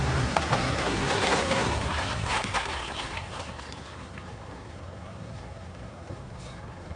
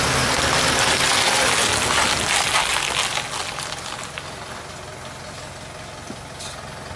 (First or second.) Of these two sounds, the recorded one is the second